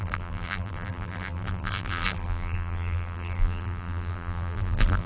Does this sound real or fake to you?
fake